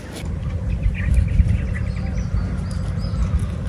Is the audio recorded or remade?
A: recorded